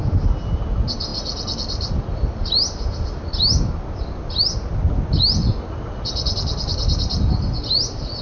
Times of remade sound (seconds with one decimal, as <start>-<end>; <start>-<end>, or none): none